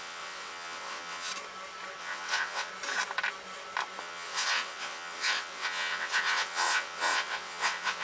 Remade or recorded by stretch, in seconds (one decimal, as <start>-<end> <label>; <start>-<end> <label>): 0.0-1.3 remade; 1.3-2.0 recorded; 2.0-2.7 remade; 2.7-4.0 recorded; 4.0-8.0 remade